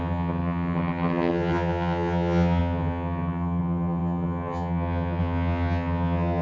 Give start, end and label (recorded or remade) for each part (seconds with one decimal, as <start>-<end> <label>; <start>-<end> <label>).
0.0-6.4 remade